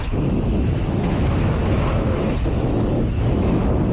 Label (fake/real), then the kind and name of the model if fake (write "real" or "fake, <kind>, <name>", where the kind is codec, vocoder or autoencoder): fake, autoencoder, DAC-VAE